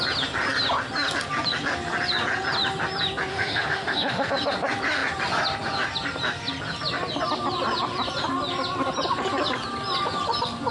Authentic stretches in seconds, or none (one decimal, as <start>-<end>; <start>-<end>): 0.0-3.3; 4.3-10.7